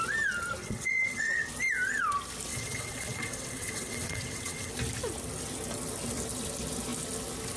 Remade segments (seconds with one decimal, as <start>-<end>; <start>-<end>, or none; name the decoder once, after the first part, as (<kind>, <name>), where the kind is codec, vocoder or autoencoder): 0.6-1.5 (vocoder, WaveNeXt); 2.5-4.7